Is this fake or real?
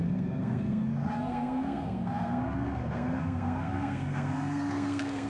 fake